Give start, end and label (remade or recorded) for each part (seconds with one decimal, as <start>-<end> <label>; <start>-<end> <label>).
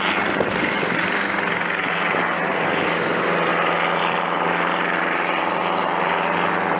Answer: 0.0-6.8 recorded